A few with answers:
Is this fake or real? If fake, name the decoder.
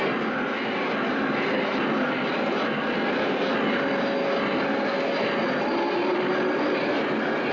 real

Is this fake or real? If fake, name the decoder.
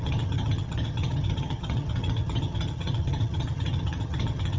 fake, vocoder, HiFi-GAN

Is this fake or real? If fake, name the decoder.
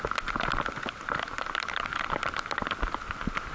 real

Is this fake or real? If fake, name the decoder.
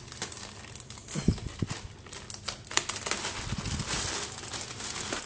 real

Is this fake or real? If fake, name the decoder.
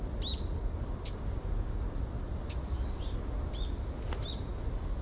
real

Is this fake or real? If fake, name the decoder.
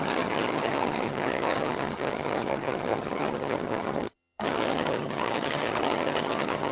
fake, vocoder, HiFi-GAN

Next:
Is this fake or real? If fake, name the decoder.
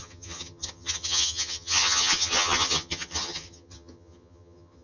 fake, vocoder, HiFi-GAN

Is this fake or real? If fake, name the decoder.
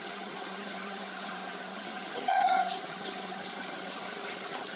fake, vocoder, HiFi-GAN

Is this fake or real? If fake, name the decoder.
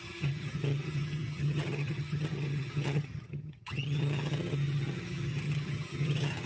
fake, vocoder, HiFi-GAN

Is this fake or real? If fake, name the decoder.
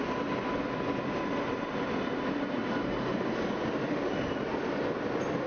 real